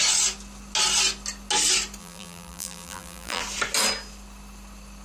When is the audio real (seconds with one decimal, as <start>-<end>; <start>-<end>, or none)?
0.0-2.0; 3.4-5.0